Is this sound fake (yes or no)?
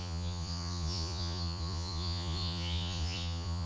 yes